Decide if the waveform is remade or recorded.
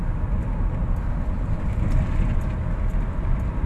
recorded